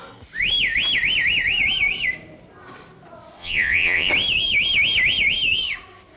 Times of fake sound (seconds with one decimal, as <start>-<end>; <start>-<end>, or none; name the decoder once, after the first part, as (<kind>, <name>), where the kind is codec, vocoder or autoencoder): 3.4-4.1 (vocoder, Vocos)